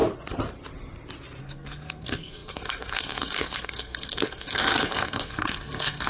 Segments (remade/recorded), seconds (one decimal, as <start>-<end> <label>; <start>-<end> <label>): 0.0-1.4 recorded; 1.4-6.1 remade